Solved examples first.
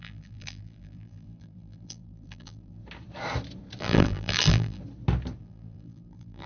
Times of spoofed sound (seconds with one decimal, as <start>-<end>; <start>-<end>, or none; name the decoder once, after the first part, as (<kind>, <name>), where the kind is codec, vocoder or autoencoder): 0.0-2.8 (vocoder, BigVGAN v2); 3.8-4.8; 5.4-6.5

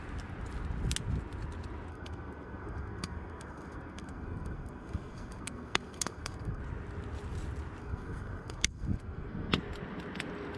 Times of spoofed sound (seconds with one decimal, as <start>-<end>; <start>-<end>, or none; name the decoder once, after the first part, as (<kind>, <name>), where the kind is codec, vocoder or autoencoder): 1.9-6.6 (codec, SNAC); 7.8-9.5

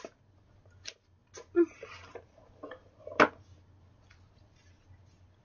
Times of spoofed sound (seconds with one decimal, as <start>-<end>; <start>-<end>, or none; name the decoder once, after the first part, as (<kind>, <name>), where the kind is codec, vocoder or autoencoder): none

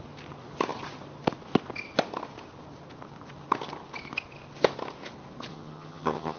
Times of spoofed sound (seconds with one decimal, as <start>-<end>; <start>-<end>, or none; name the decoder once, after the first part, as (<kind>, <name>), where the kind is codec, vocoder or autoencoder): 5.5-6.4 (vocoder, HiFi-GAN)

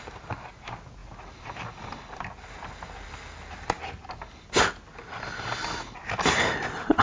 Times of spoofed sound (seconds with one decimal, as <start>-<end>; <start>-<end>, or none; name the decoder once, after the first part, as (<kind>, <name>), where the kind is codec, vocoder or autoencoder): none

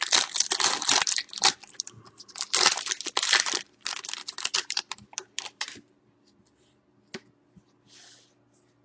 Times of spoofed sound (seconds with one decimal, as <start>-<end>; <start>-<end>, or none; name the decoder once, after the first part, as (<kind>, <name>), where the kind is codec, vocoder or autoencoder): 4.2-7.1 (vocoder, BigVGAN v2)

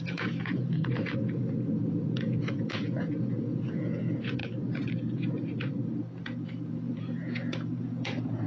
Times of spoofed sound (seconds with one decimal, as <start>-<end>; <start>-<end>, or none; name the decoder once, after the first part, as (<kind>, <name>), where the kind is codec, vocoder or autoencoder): 0.0-4.4 (vocoder, Vocos); 6.2-8.5